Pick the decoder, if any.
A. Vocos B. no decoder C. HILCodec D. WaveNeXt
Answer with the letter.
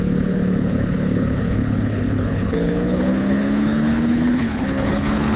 C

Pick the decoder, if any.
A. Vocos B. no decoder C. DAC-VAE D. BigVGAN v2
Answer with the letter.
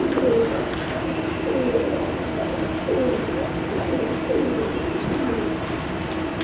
B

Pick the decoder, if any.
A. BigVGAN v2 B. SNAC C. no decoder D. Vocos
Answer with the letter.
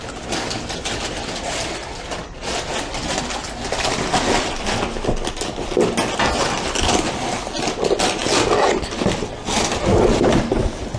C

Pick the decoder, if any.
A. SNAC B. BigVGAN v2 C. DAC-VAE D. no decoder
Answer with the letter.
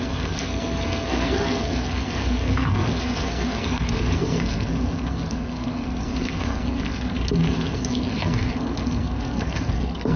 A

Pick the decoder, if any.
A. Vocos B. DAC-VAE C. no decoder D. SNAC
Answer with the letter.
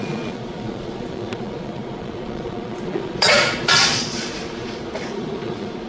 A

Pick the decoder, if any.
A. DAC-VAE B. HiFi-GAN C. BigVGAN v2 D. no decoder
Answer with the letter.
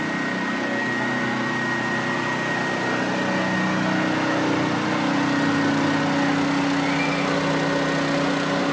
D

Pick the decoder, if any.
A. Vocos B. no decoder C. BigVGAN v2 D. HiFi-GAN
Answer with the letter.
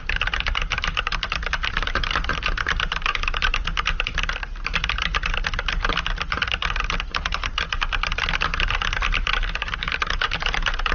B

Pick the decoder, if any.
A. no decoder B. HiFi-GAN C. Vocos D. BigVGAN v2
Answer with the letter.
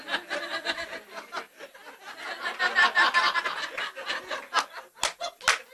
A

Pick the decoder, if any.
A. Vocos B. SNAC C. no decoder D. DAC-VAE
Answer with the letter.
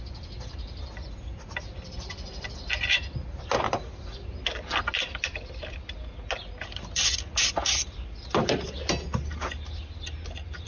C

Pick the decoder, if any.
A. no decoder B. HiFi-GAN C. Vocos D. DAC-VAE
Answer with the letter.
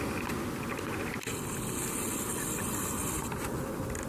A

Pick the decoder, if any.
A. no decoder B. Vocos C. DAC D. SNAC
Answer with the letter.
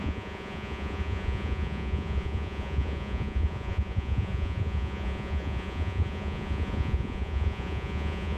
B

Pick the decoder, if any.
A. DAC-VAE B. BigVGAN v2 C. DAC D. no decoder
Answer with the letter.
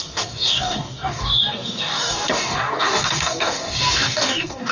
C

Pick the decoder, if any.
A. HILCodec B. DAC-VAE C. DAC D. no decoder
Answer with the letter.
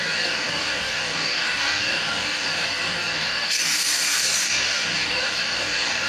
C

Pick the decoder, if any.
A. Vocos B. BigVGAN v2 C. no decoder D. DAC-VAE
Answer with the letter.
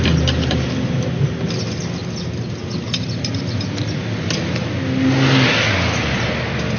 C